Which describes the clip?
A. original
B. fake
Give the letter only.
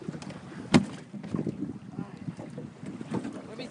A